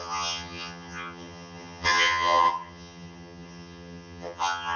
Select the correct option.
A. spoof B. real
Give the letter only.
A